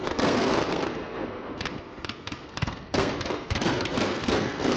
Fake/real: fake